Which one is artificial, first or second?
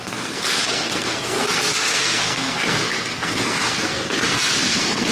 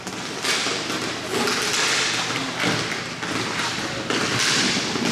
first